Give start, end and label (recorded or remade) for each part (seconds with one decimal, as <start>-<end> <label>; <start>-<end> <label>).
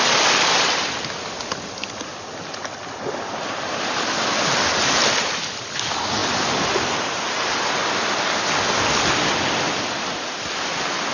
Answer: 0.0-11.1 recorded